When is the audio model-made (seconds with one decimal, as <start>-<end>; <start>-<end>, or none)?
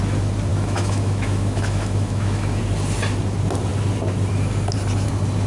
0.5-2.6